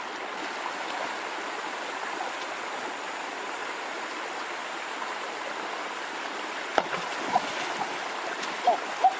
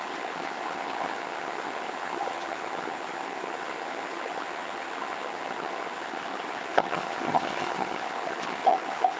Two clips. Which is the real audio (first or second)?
first